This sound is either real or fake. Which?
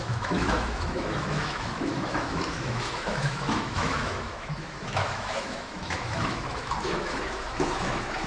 fake